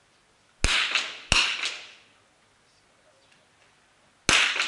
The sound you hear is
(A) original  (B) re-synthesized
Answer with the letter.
A